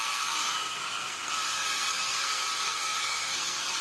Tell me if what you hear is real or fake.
fake